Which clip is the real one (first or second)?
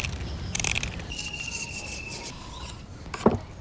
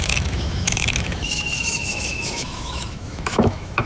first